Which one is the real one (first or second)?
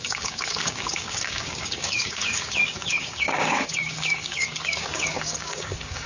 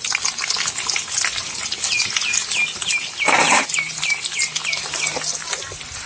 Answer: second